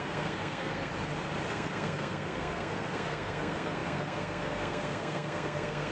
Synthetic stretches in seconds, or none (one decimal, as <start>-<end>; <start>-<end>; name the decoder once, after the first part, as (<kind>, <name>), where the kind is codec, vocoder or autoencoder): 0.0-0.9 (codec, SNAC); 1.5-5.9